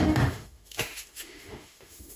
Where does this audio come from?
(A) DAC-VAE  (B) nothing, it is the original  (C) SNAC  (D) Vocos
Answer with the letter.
A